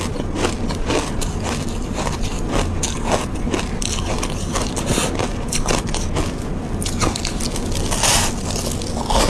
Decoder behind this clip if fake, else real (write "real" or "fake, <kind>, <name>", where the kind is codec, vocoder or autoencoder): real